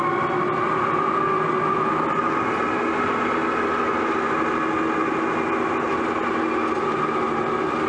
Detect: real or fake real